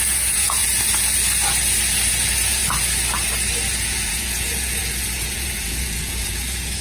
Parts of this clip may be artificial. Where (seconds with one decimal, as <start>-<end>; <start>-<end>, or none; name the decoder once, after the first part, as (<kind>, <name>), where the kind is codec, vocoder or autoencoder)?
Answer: 0.0-0.6 (vocoder, Vocos); 2.1-2.6; 3.7-6.8